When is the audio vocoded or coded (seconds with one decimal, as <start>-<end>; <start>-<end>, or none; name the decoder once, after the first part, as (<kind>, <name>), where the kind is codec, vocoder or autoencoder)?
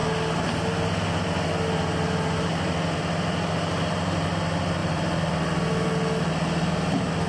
none